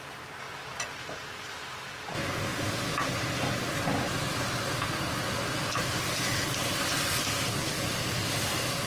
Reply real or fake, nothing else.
real